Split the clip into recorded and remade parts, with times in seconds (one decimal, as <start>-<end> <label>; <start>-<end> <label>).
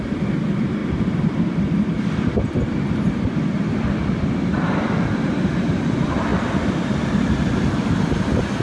0.0-8.6 remade